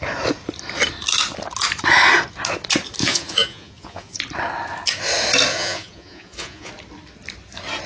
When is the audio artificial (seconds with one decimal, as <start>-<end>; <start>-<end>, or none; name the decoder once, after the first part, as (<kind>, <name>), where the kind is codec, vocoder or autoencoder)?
3.0-4.2 (vocoder, Vocos); 5.5-6.7